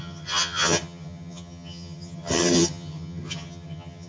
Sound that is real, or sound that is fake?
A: fake